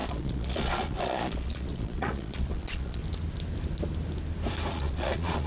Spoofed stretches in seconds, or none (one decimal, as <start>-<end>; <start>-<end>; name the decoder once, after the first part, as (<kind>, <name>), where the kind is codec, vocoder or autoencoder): 0.0-3.0 (vocoder, Vocos); 4.7-5.5